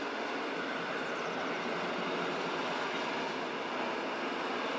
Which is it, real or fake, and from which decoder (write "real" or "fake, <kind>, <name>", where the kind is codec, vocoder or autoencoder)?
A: real